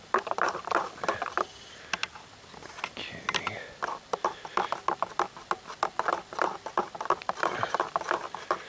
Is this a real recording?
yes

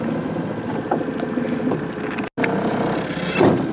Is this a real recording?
yes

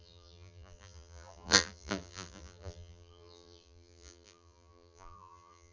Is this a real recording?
no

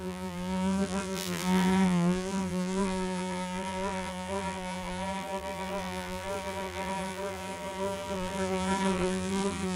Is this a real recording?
no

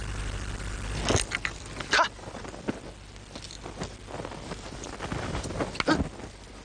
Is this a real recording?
yes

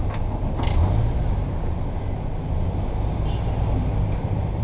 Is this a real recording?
yes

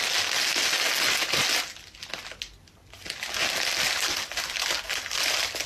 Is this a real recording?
yes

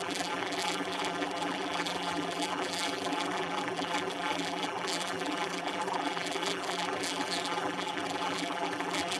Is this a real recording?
no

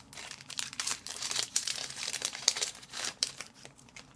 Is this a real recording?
no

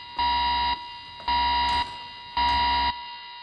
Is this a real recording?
yes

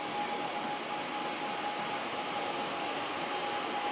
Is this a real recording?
yes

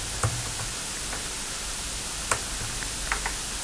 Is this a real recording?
yes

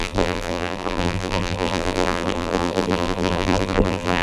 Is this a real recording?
no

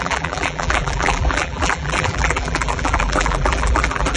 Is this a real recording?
no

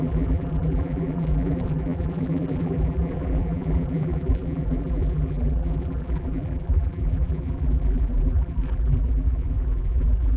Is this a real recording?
no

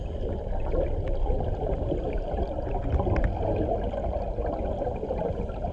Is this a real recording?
yes